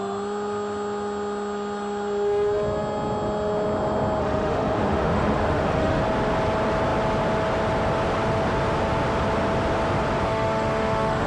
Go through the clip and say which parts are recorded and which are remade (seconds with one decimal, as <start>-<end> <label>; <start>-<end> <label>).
0.0-4.2 recorded; 4.2-6.0 remade; 6.0-10.3 recorded; 10.3-11.3 remade